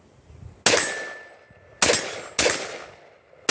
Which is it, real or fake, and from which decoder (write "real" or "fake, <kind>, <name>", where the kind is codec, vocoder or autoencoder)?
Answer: real